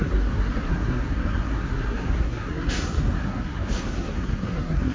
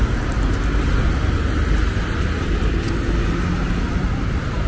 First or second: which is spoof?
first